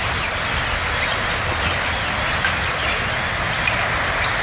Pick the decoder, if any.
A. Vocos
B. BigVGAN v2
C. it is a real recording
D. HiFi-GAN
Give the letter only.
C